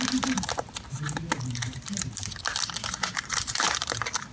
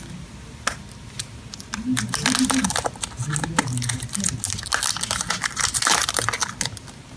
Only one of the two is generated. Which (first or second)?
first